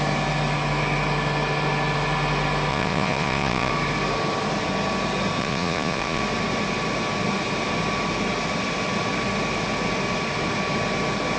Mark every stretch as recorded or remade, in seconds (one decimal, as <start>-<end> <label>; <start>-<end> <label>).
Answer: 0.0-2.7 recorded; 2.7-3.7 remade; 3.7-5.4 recorded; 5.4-6.2 remade; 6.2-11.4 recorded